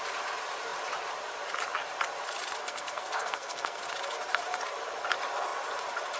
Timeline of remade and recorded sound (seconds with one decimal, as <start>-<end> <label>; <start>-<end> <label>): 0.0-2.6 recorded; 2.6-3.8 remade; 3.8-6.2 recorded